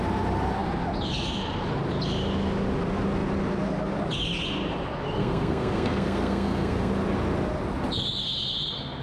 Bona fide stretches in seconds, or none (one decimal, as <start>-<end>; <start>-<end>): 0.0-5.2; 6.9-9.0